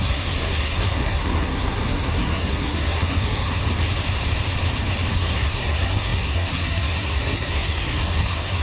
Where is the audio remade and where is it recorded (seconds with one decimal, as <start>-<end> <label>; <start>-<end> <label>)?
0.0-3.6 remade; 3.6-5.1 recorded; 5.1-8.6 remade